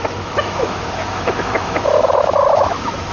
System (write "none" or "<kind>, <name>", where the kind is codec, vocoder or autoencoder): autoencoder, DAC-VAE